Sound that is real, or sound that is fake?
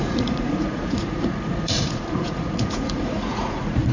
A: fake